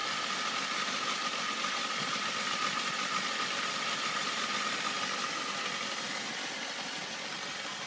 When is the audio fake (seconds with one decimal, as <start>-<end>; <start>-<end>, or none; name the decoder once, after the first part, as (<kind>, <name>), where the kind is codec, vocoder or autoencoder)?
none